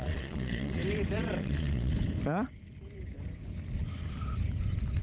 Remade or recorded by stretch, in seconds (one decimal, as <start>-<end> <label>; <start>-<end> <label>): 0.0-0.8 remade; 0.8-1.4 recorded; 1.4-1.9 remade; 1.9-5.0 recorded